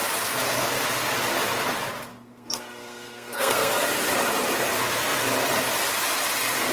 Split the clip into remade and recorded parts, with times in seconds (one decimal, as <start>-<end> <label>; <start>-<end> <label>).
0.0-2.1 recorded; 2.1-3.7 remade; 3.7-6.7 recorded